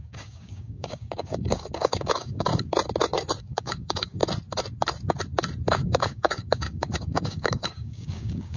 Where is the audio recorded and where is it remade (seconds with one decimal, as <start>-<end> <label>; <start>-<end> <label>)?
0.0-2.5 remade; 2.5-3.4 recorded; 3.4-4.2 remade; 4.2-5.7 recorded; 5.7-8.6 remade